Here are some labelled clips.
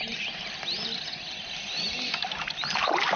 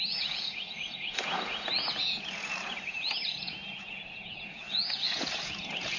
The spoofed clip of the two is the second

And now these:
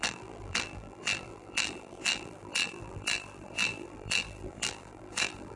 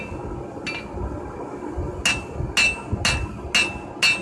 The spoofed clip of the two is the first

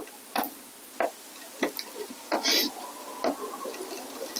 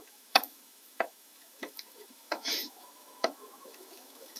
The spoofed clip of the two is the second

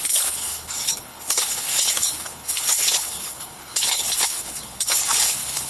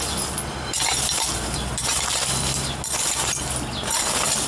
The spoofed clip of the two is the first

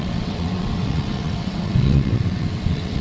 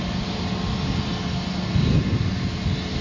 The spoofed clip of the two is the first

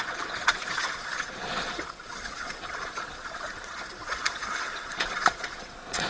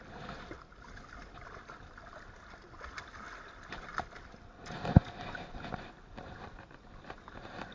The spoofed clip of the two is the first